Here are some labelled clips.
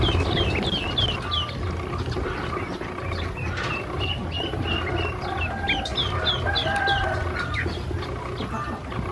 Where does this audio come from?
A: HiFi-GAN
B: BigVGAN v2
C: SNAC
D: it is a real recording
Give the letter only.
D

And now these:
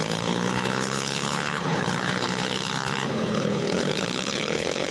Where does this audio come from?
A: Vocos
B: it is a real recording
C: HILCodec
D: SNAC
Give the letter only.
C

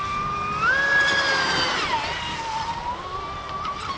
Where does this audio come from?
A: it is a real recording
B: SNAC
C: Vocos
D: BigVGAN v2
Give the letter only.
A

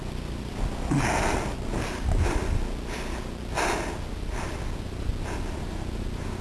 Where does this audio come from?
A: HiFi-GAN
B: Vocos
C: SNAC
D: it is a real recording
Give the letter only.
D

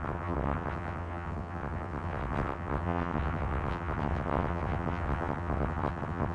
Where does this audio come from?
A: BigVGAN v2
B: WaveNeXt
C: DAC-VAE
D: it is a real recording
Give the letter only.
B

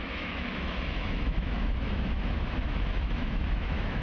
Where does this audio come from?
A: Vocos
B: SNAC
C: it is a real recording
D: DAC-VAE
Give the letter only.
D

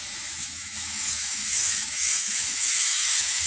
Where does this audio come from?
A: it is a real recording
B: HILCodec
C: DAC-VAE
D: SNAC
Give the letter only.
C